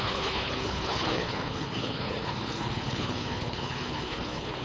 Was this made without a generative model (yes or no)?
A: no